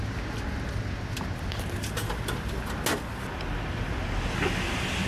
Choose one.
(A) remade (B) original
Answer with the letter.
B